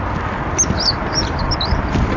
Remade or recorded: recorded